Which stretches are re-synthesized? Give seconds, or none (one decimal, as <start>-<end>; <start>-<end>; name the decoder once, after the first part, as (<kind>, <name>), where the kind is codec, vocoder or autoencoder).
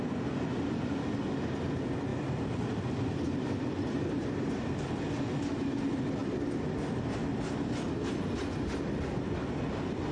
2.1-4.7 (vocoder, BigVGAN v2)